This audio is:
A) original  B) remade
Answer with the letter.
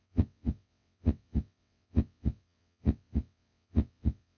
B